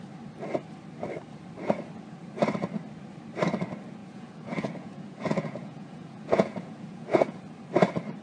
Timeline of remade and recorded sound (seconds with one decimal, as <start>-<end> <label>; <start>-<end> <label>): 0.0-4.0 recorded; 4.0-7.4 remade; 7.4-8.2 recorded

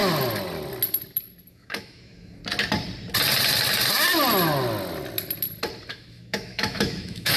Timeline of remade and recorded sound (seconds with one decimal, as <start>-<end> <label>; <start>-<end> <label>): 0.0-1.5 recorded; 1.5-2.4 remade; 2.4-5.9 recorded; 5.9-7.4 remade

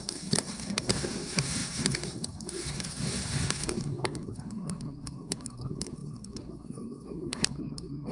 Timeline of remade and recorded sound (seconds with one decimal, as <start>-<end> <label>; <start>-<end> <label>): 0.0-8.1 remade